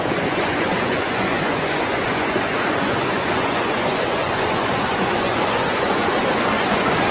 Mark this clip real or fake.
fake